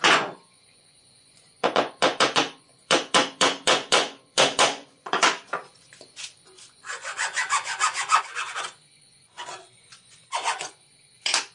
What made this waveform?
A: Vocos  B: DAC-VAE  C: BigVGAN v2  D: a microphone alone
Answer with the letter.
A